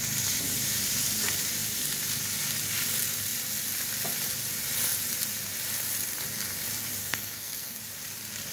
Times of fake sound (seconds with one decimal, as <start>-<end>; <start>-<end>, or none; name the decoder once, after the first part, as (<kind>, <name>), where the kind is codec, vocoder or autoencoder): 7.0-7.8 (codec, SNAC)